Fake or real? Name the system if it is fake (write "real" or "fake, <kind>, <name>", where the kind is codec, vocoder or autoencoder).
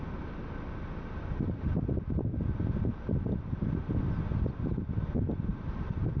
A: real